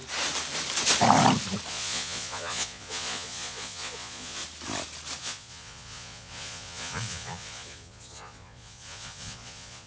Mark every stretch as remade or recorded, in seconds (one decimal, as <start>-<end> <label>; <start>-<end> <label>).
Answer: 0.0-1.7 recorded; 1.7-4.4 remade; 4.4-5.2 recorded; 5.2-9.9 remade